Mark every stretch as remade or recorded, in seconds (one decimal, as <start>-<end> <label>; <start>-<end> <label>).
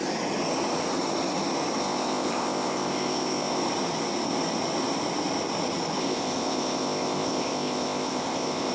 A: 0.0-1.8 recorded; 1.8-3.6 remade; 3.6-6.0 recorded; 6.0-8.7 remade